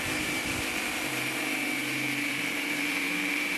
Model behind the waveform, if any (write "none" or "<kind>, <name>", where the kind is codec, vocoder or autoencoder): vocoder, BigVGAN v2